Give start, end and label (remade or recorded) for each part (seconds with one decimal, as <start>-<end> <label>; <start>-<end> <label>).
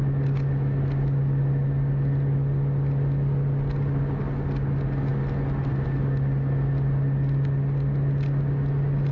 0.0-9.1 recorded